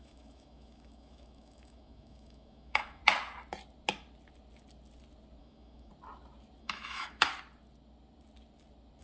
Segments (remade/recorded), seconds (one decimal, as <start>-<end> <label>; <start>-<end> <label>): 0.0-3.0 remade; 3.0-5.4 recorded; 5.4-5.9 remade; 5.9-6.6 recorded; 6.6-7.3 remade; 7.3-9.0 recorded